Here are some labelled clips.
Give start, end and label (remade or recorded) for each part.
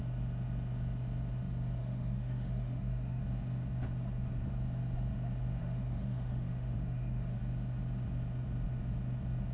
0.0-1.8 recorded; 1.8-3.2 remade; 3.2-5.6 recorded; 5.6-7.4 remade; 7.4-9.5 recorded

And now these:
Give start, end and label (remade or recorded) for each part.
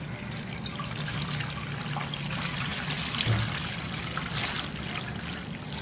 0.0-5.8 recorded